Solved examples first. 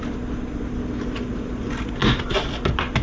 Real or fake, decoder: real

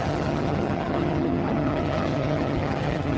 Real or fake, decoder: fake, vocoder, HiFi-GAN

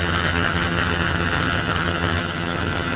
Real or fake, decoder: fake, vocoder, HiFi-GAN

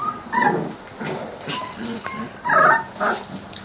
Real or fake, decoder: real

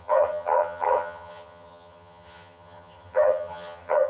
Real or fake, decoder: fake, vocoder, HiFi-GAN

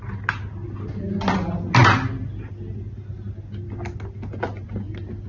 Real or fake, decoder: real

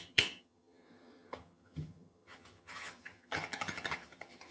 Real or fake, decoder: fake, vocoder, HiFi-GAN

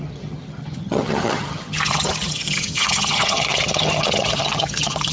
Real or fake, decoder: fake, vocoder, HiFi-GAN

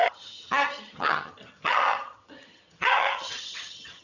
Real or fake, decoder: fake, vocoder, HiFi-GAN